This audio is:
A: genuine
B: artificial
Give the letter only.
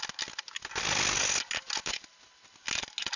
A